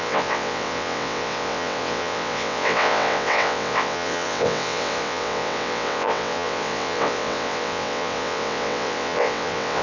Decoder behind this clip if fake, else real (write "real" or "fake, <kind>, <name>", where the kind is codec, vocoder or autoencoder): fake, vocoder, WaveNeXt